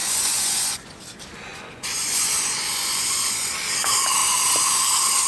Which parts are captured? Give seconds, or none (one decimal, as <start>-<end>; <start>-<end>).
1.0-1.5; 3.5-5.3